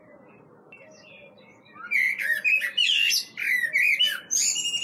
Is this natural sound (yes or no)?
yes